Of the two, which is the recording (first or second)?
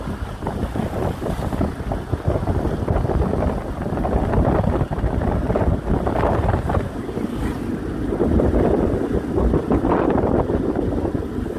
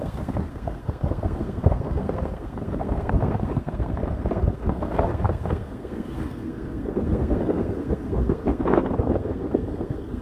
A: first